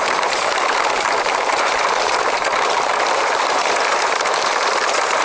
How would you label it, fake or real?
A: fake